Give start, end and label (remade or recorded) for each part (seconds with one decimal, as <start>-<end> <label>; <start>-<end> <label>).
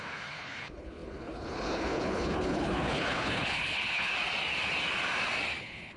0.0-4.1 remade; 4.1-5.6 recorded; 5.6-6.0 remade